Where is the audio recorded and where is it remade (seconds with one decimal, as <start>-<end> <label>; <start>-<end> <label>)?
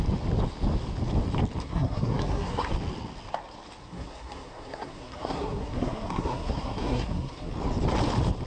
0.0-1.6 recorded; 1.6-2.7 remade; 2.7-3.8 recorded; 3.8-7.5 remade; 7.5-8.5 recorded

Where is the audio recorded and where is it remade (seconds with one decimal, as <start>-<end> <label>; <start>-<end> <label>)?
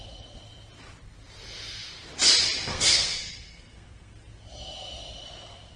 0.0-2.7 recorded; 2.7-4.1 remade; 4.1-5.8 recorded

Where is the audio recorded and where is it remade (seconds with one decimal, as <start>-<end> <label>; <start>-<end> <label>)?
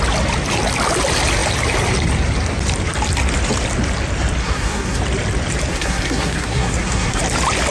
0.0-4.4 recorded; 4.4-5.0 remade; 5.0-5.7 recorded; 5.7-7.2 remade; 7.2-7.7 recorded